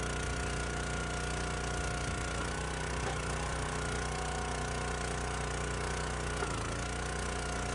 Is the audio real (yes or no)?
yes